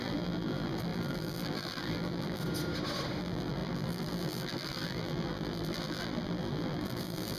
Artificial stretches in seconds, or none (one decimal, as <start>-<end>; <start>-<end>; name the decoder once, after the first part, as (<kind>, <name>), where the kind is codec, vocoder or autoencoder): 0.0-2.4 (vocoder, BigVGAN v2); 3.2-7.4